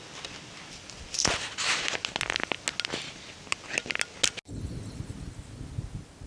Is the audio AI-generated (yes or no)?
no